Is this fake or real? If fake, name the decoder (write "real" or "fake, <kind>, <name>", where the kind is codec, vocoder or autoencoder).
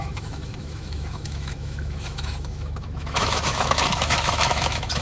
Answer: fake, autoencoder, DAC-VAE